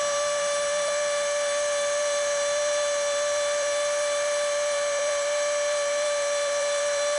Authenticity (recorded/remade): remade